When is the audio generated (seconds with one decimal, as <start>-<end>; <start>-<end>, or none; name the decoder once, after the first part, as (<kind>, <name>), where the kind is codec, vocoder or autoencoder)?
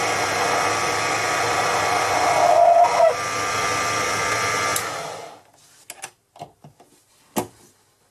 none